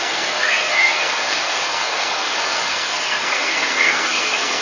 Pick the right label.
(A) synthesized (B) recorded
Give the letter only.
A